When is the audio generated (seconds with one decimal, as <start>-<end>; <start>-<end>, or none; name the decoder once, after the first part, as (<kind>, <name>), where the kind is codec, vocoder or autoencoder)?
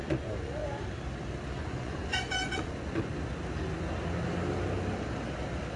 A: 0.0-0.6 (vocoder, Vocos); 1.5-3.1